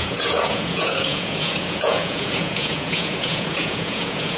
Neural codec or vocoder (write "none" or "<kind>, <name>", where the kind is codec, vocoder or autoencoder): vocoder, Vocos